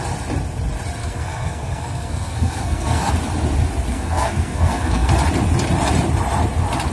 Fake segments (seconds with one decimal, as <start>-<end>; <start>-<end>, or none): 1.0-3.1; 3.9-5.1